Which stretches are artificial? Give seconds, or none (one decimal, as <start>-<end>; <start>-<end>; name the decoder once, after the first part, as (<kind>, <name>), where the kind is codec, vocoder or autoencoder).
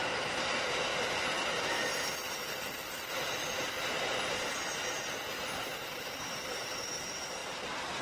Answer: 0.0-0.5 (vocoder, BigVGAN v2); 0.9-3.1; 7.4-8.0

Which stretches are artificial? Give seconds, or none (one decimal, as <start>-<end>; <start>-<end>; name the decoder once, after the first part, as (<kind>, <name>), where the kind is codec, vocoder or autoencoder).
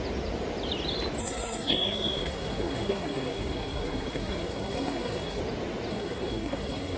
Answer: 1.2-5.4 (codec, SNAC); 5.9-7.0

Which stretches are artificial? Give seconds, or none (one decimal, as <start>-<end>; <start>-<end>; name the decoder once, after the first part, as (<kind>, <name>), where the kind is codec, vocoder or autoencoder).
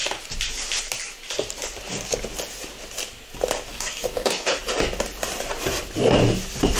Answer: 3.7-4.6 (codec, DAC)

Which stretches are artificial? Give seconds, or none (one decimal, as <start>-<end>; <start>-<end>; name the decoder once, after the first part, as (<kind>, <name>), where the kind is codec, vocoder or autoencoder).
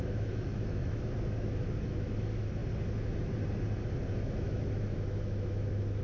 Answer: 0.0-2.6 (autoencoder, DAC-VAE); 4.2-6.0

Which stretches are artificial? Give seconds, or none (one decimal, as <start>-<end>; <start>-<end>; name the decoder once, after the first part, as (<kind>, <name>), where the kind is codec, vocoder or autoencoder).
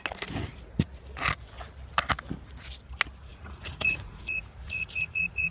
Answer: 3.3-5.5 (vocoder, Vocos)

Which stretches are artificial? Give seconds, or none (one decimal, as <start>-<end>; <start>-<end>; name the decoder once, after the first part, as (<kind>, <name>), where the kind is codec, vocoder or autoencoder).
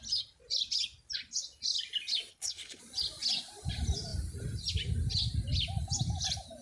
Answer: 2.3-2.8 (codec, HILCodec)